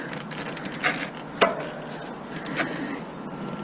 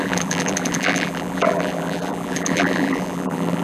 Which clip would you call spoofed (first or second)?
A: second